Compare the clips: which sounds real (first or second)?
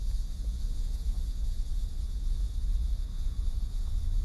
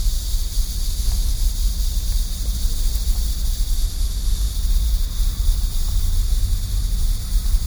second